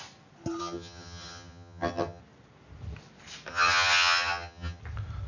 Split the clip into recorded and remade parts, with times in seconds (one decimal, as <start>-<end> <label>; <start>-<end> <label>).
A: 0.0-0.6 recorded; 0.6-2.2 remade; 2.2-3.5 recorded; 3.5-4.8 remade; 4.8-5.3 recorded